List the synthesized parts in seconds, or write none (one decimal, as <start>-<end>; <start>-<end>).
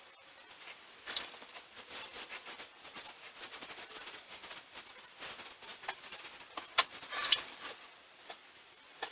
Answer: none